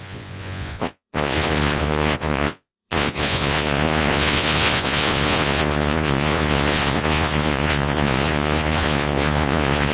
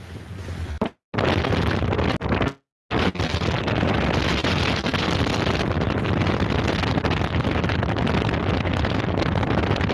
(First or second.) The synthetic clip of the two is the first